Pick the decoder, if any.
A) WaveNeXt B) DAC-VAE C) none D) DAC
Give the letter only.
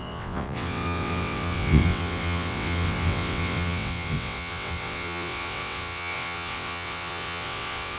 A